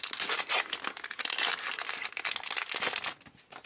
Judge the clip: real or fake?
real